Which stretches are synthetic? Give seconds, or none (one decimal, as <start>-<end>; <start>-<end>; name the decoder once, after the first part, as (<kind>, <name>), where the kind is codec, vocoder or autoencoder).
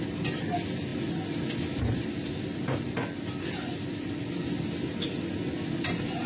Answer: none